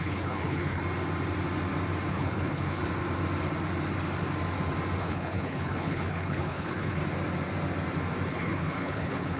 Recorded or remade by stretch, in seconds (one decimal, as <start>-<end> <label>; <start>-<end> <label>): 0.0-0.8 remade; 0.8-2.1 recorded; 2.1-2.8 remade; 2.8-5.0 recorded; 5.0-7.0 remade; 7.0-8.3 recorded; 8.3-9.4 remade